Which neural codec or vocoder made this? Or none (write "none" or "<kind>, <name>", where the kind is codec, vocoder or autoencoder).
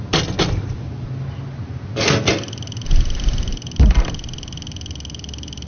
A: none